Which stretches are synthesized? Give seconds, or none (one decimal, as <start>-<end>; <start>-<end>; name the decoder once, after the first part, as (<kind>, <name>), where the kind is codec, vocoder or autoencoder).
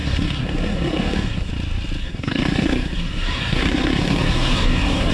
0.0-1.5 (codec, SNAC); 2.0-5.1